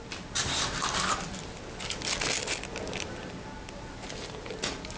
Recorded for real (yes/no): yes